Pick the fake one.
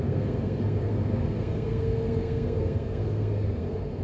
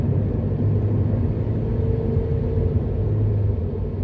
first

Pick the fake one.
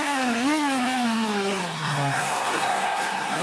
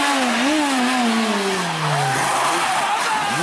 first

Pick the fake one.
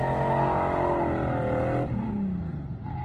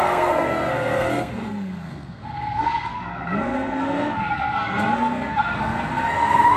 second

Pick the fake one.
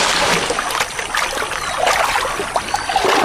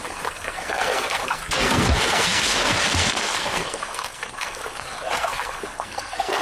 second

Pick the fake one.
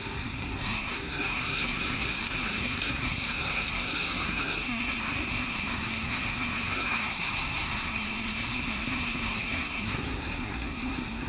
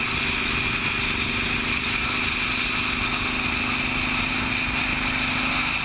first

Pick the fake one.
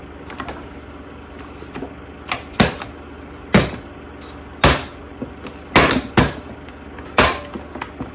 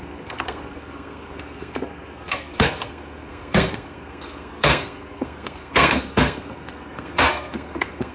second